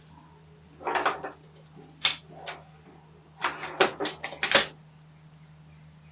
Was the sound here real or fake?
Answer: real